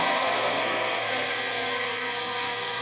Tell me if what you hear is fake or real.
fake